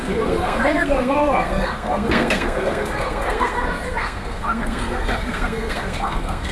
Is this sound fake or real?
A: fake